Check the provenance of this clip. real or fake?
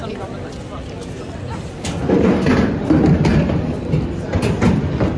real